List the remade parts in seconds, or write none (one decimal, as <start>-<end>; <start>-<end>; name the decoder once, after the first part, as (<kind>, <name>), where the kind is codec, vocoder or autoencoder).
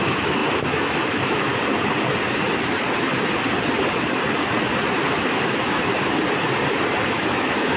0.0-1.5 (autoencoder, DAC-VAE); 5.1-5.9; 7.0-7.8